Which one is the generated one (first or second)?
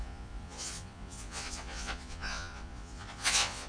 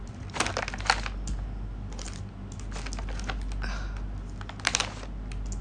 first